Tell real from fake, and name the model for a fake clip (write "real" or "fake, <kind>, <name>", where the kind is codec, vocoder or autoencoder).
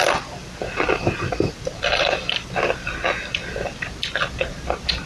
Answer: real